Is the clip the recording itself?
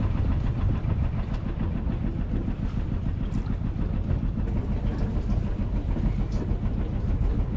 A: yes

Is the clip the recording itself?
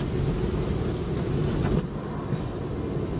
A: yes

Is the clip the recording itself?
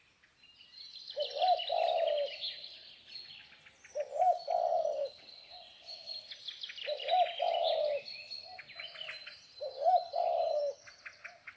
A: yes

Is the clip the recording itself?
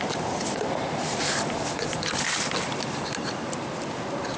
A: yes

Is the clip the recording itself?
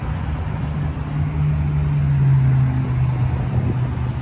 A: yes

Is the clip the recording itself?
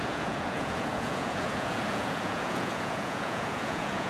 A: no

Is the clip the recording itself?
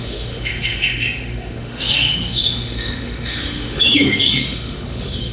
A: no